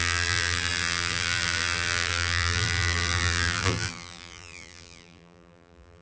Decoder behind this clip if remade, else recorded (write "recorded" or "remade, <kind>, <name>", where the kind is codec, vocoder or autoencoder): remade, vocoder, BigVGAN v2